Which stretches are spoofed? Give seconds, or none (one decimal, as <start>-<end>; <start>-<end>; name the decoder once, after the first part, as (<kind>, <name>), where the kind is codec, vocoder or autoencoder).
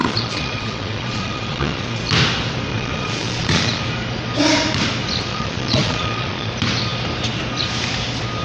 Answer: 0.0-2.0 (vocoder, Vocos); 2.7-3.8; 5.3-6.5